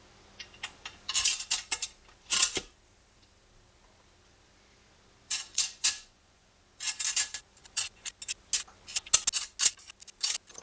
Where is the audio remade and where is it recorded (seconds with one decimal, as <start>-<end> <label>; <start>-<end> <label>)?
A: 0.0-5.5 recorded; 5.5-6.6 remade; 6.6-7.6 recorded; 7.6-8.1 remade; 8.1-10.6 recorded